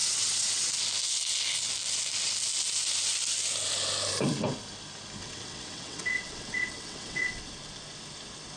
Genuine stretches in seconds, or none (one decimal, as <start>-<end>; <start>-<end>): 0.7-5.2; 7.4-8.6